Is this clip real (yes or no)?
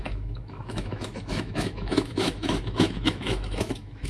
no